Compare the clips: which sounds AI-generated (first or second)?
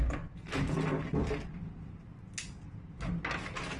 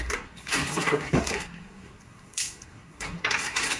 second